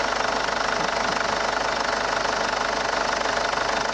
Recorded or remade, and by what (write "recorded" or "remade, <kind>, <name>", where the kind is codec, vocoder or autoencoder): recorded